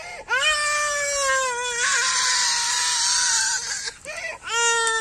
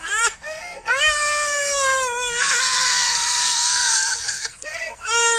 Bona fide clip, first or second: first